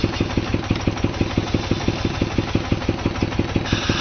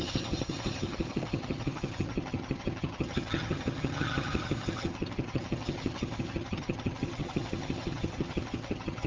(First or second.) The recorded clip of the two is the first